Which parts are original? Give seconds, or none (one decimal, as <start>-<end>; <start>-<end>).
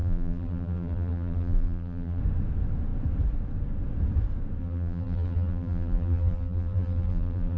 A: 2.2-4.6